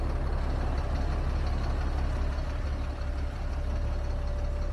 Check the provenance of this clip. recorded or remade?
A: recorded